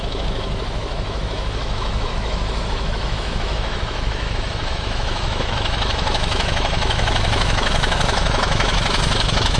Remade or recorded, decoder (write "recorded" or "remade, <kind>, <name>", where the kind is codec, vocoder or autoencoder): remade, autoencoder, DAC-VAE